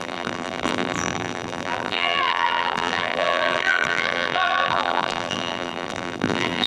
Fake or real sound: fake